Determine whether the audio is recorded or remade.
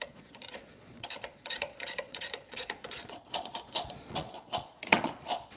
remade